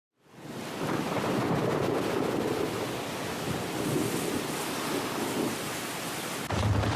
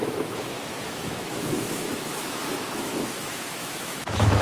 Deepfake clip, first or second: second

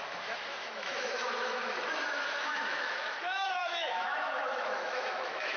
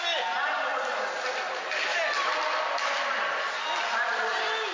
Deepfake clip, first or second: first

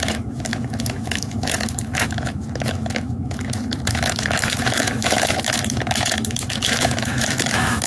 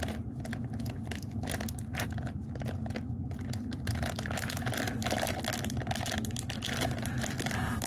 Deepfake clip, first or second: first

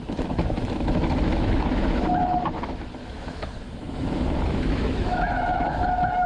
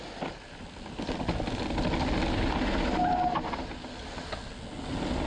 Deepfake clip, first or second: first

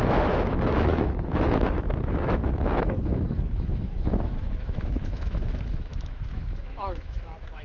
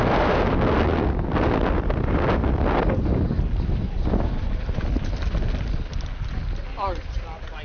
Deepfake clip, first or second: first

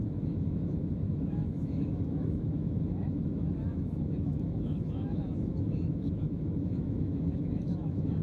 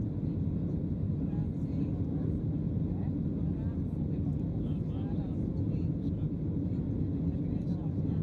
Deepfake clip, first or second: first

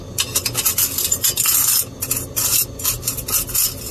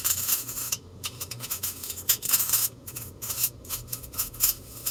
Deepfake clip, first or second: second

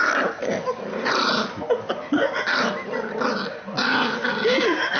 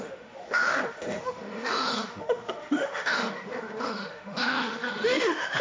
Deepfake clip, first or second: second